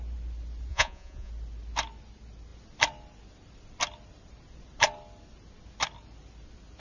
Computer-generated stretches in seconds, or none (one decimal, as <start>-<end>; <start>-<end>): 0.7-1.3